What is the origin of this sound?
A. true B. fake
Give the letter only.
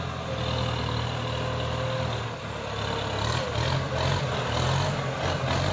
A